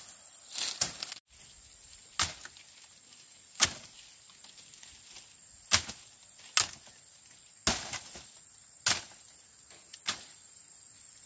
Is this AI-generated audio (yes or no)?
no